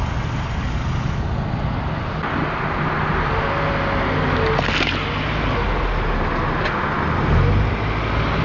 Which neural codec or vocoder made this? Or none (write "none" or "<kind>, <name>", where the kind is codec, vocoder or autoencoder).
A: none